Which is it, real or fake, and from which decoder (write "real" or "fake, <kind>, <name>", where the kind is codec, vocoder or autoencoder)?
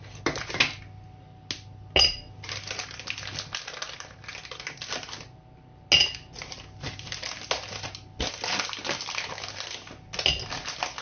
real